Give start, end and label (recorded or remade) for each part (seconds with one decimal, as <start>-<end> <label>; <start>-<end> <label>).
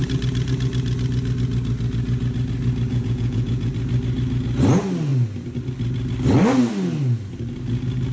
0.0-2.9 recorded; 2.9-3.7 remade; 3.7-8.1 recorded